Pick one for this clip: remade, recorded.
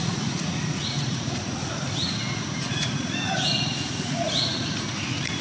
remade